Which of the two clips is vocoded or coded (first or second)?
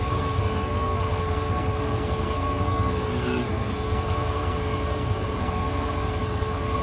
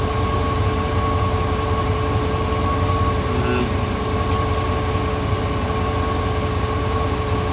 first